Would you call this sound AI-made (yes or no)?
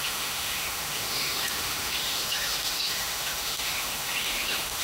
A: yes